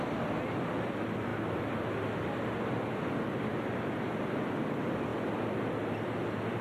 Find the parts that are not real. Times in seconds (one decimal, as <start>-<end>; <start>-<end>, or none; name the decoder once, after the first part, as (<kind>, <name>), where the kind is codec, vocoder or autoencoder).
none